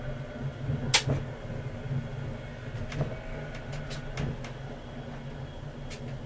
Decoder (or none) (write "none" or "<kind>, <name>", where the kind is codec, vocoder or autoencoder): none